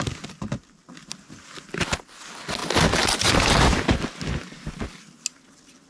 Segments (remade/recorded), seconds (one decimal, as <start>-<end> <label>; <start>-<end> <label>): 0.0-5.9 recorded